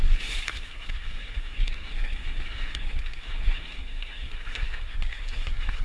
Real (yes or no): no